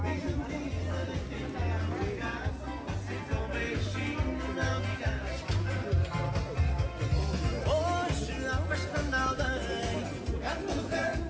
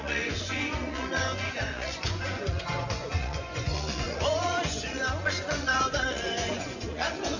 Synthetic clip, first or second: second